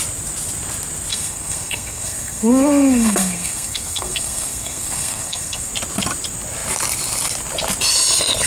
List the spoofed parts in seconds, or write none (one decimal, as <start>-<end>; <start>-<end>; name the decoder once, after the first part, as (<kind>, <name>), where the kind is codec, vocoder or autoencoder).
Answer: 1.1-5.7 (codec, SNAC)